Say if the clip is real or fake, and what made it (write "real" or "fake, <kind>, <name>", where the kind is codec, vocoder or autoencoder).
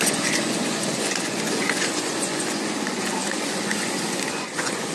fake, vocoder, Vocos